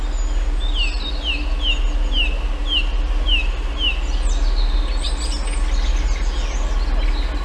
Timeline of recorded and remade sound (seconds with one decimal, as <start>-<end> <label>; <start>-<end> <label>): 0.0-7.4 recorded